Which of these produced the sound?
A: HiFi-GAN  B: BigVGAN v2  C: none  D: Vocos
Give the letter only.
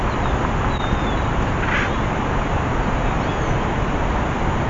C